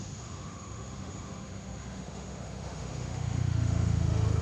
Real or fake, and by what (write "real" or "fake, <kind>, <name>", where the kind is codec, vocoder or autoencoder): fake, autoencoder, DAC-VAE